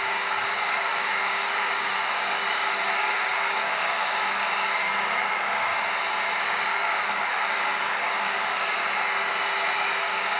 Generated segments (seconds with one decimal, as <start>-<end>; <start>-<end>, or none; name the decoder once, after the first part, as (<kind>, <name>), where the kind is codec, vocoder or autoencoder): 0.0-5.7 (codec, DAC); 6.4-8.8; 10.0-10.4